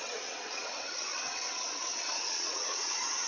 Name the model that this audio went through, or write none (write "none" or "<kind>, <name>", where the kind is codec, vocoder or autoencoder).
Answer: vocoder, WaveNeXt